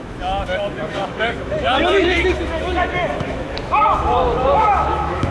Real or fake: fake